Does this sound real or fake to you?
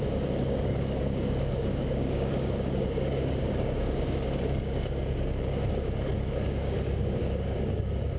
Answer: fake